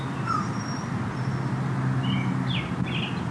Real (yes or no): yes